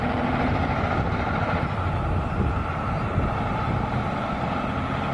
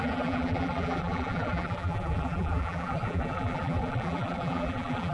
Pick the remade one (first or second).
second